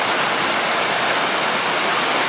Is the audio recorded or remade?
recorded